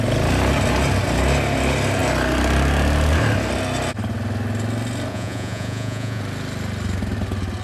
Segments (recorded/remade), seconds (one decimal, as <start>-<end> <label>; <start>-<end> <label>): 0.0-5.1 recorded; 5.1-6.2 remade; 6.2-7.6 recorded